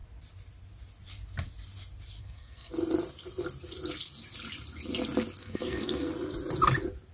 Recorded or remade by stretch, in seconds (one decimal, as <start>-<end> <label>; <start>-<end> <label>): 0.0-2.2 recorded; 2.2-2.7 remade; 2.7-5.4 recorded; 5.4-6.1 remade; 6.1-7.1 recorded